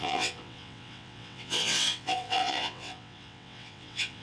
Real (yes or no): no